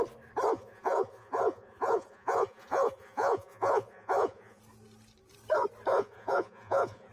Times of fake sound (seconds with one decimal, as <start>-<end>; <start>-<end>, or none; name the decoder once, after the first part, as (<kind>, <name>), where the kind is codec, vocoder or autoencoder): 0.5-4.6 (vocoder, Vocos); 5.9-7.1